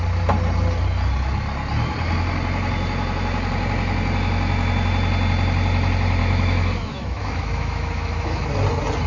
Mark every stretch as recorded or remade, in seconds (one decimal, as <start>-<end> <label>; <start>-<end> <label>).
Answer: 0.0-6.2 recorded; 6.2-8.5 remade; 8.5-9.1 recorded

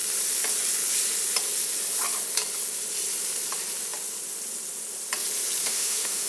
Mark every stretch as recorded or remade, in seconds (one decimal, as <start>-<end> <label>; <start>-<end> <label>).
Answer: 0.0-5.6 recorded; 5.6-6.3 remade